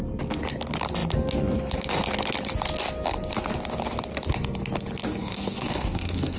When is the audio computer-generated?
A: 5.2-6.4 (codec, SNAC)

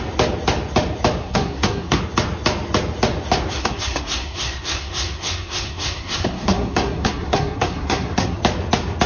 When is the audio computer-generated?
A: 1.2-2.0 (codec, SNAC); 3.6-8.4

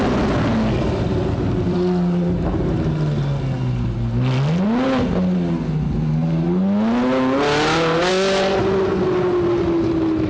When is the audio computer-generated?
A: none

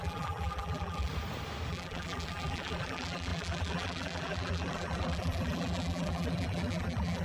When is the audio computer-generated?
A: 0.0-1.1 (vocoder, BigVGAN v2); 1.7-7.2